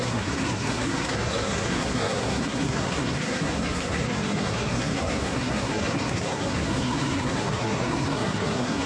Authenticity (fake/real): fake